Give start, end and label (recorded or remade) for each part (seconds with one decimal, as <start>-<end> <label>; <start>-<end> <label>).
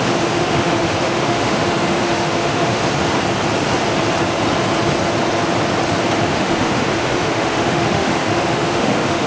0.0-2.8 remade; 2.8-6.2 recorded; 6.2-9.3 remade